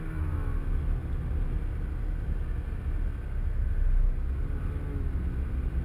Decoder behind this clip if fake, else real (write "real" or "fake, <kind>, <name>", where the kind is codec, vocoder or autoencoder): real